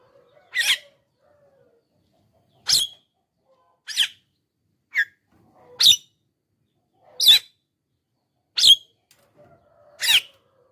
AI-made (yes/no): no